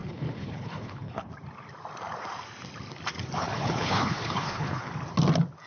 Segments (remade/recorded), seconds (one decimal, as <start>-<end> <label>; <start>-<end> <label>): 0.0-1.3 remade; 1.3-3.4 recorded; 3.4-4.9 remade; 4.9-5.7 recorded